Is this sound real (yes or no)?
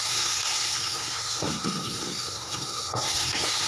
no